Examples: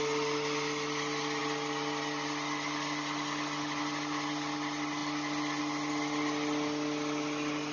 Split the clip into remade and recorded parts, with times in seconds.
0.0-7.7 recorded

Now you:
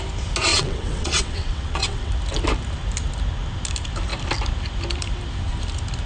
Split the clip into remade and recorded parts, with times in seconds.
0.0-0.5 recorded; 0.5-2.1 remade; 2.1-6.1 recorded